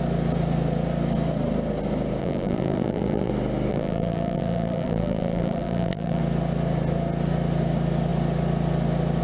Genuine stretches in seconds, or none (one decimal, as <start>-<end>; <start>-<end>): 0.0-2.2; 3.3-3.7; 6.2-9.2